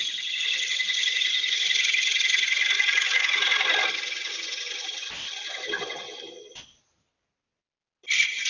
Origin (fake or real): real